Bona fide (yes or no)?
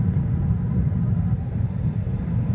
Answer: no